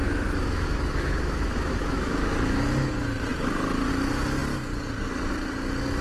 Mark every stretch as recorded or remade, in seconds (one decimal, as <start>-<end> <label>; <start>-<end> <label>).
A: 0.0-2.3 remade; 2.3-6.0 recorded